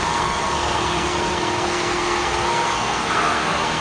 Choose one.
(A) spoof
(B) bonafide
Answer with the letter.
A